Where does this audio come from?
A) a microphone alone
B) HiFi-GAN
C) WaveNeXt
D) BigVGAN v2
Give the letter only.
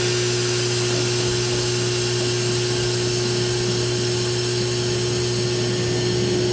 A